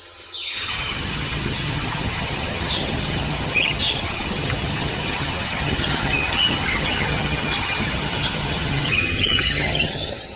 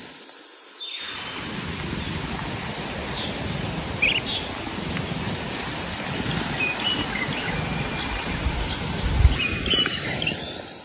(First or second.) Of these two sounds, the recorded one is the second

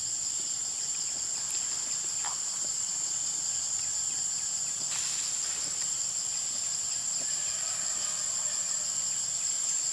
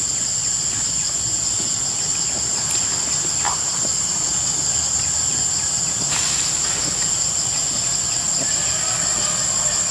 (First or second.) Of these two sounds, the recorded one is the second